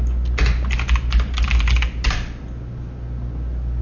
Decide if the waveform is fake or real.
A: real